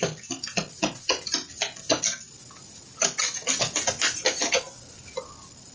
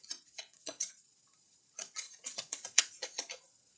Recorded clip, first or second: first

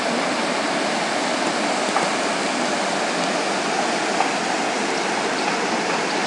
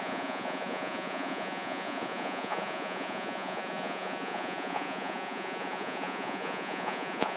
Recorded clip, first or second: first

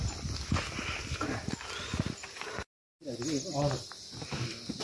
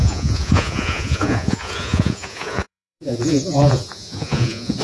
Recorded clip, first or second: first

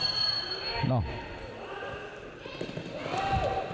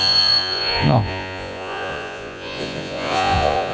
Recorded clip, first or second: first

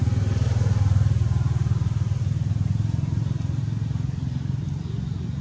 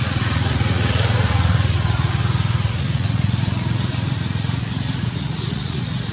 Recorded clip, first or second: first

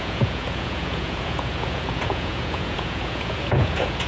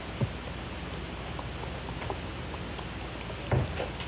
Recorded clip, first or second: second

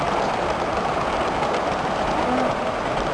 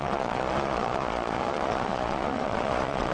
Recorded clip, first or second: first